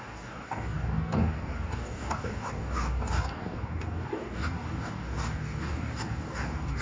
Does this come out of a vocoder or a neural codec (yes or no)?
yes